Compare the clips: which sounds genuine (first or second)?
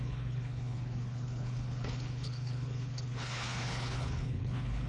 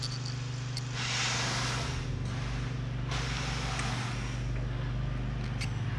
second